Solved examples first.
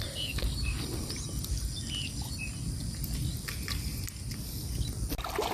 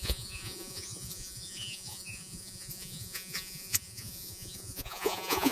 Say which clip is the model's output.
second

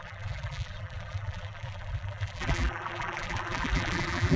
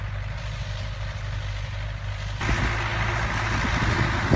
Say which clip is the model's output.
first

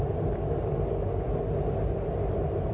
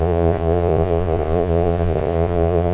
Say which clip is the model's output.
second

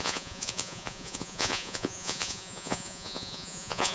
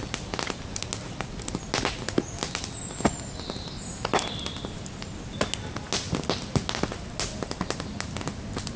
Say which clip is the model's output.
first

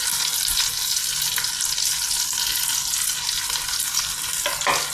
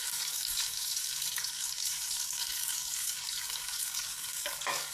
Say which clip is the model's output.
second